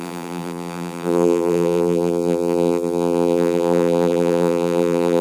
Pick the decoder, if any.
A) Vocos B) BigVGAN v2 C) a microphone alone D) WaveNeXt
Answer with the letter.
B